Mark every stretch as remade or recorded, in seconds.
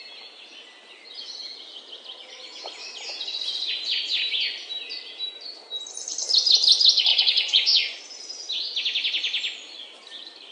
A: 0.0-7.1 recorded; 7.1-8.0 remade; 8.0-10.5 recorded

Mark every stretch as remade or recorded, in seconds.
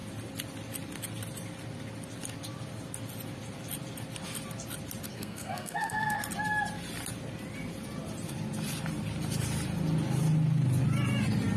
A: 0.0-5.1 recorded; 5.1-6.2 remade; 6.2-11.6 recorded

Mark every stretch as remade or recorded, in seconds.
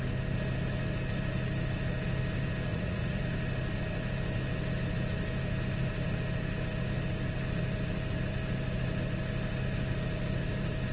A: 0.0-2.7 recorded; 2.7-3.2 remade; 3.2-10.9 recorded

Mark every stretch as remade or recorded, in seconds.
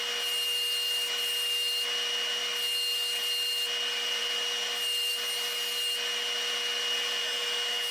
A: 0.0-7.2 recorded; 7.2-7.9 remade